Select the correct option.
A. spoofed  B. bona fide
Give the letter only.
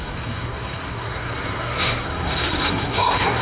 A